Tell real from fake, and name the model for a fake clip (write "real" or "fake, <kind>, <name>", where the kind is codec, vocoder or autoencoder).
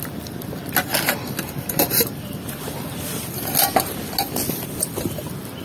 real